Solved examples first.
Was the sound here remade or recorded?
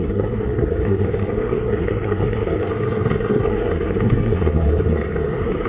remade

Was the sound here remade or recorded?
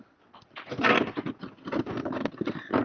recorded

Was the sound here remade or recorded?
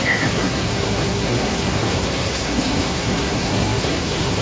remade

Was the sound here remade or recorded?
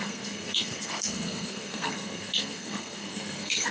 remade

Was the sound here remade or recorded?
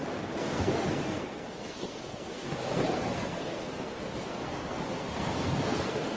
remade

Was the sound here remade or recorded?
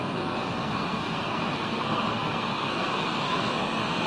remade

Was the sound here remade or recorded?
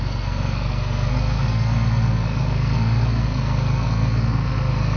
remade